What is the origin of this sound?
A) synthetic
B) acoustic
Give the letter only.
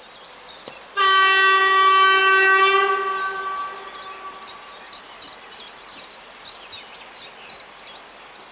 B